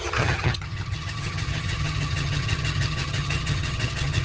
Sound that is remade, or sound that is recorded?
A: remade